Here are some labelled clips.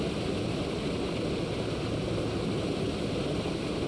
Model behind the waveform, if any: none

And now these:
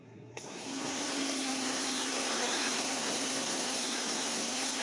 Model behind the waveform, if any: codec, SNAC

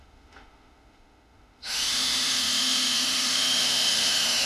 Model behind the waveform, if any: autoencoder, DAC-VAE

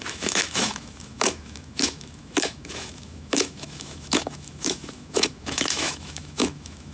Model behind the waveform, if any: autoencoder, DAC-VAE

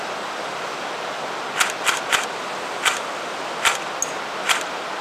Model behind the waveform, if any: none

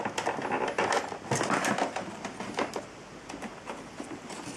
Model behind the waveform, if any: none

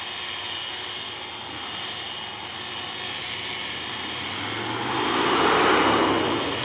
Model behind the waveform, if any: none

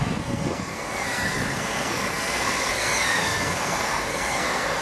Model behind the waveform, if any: codec, SNAC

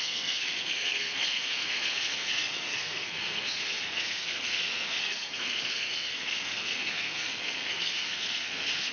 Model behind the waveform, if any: codec, SNAC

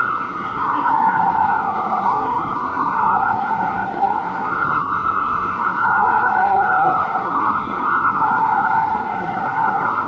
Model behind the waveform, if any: codec, SNAC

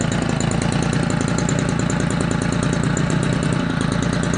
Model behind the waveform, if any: none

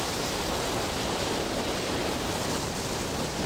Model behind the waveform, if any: vocoder, BigVGAN v2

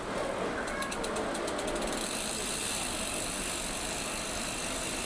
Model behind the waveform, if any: none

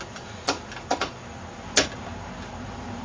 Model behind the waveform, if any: none